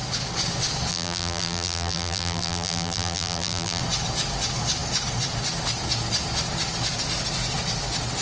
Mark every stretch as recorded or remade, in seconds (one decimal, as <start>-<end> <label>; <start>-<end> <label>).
0.0-0.9 recorded; 0.9-3.8 remade; 3.8-8.2 recorded